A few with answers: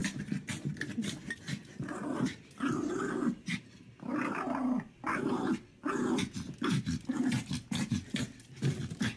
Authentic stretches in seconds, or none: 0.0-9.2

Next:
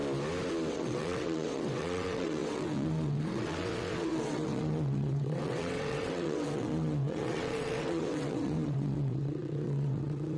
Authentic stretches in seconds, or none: 0.0-0.7

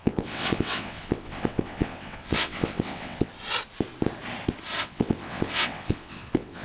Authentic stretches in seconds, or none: 3.3-4.8

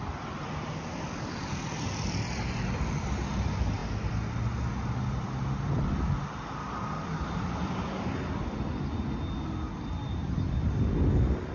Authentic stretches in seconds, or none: 0.0-11.5